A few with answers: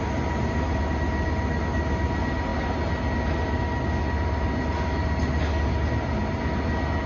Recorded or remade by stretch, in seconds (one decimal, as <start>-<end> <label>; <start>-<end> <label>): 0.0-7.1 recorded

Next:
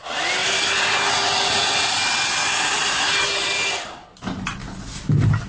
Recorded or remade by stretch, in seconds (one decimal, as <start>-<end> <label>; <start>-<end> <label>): 0.0-5.5 recorded

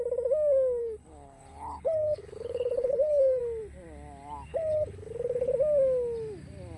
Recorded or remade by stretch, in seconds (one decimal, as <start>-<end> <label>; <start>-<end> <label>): 0.0-0.8 recorded; 0.8-3.4 remade; 3.4-4.5 recorded; 4.5-5.5 remade; 5.5-6.8 recorded

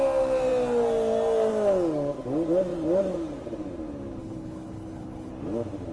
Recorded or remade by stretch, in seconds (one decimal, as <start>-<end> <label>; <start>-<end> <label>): 0.0-4.2 recorded; 4.2-5.3 remade; 5.3-5.9 recorded

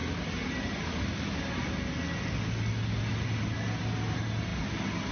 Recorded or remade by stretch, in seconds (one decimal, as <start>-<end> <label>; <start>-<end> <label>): 0.0-5.1 recorded

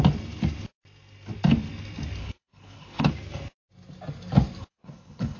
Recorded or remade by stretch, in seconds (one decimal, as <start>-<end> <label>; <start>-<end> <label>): 0.0-2.2 recorded; 2.2-3.1 remade; 3.1-4.6 recorded; 4.6-5.4 remade